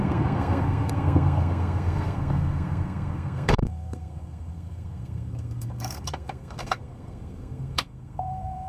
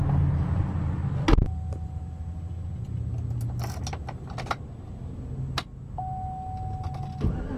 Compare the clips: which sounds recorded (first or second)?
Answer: second